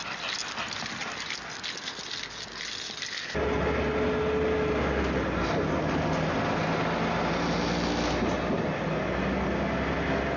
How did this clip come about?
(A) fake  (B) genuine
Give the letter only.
B